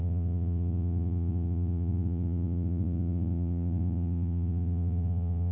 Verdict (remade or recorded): remade